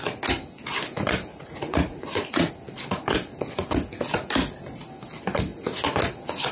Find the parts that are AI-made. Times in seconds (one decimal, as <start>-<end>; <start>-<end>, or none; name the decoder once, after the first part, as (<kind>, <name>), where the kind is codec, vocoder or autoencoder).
1.3-2.5 (vocoder, Vocos)